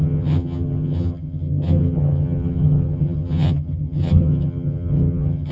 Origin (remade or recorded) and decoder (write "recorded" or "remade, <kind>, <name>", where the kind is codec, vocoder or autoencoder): remade, vocoder, HiFi-GAN